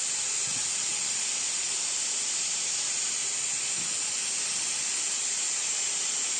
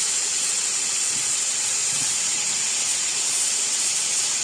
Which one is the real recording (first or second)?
first